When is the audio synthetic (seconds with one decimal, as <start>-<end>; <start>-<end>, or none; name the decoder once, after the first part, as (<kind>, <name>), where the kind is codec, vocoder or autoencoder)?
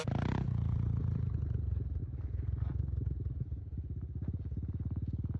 0.0-2.0 (vocoder, BigVGAN v2); 3.6-5.4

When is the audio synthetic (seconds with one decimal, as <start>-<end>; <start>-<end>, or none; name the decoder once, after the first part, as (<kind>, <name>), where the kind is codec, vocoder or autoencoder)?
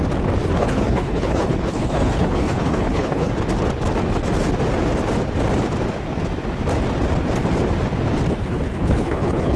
0.6-3.3 (codec, HILCodec); 8.4-9.6